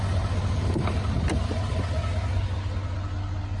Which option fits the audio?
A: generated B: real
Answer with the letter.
B